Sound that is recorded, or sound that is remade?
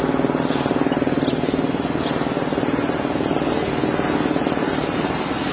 recorded